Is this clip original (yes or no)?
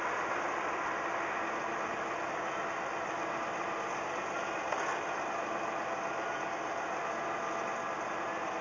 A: yes